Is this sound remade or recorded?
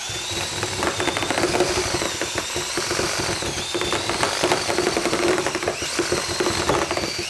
recorded